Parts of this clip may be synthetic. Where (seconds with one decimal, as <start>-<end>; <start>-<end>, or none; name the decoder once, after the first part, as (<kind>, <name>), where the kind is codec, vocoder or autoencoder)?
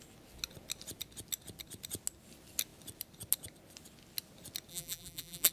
4.7-5.5 (vocoder, BigVGAN v2)